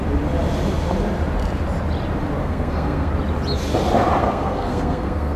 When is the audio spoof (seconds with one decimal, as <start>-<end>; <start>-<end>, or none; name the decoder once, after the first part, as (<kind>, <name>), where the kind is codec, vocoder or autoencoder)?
2.4-3.1 (codec, SNAC); 4.2-5.4